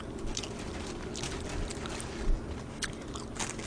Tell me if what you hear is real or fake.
real